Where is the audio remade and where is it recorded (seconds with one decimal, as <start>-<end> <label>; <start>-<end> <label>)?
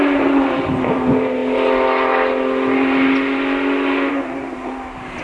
0.0-1.4 remade; 1.4-4.1 recorded; 4.1-5.2 remade